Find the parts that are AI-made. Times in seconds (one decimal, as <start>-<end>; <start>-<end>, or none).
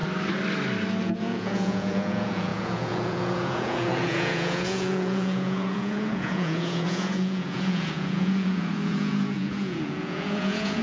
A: 1.0-10.8